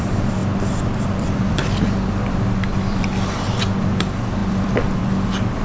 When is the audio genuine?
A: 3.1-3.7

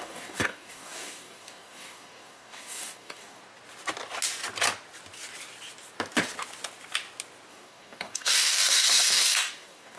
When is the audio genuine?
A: 3.4-7.5

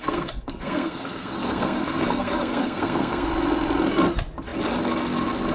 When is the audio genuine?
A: 3.3-5.5

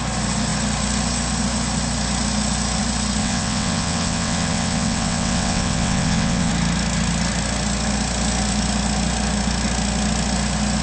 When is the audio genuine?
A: 0.0-3.2; 6.5-10.8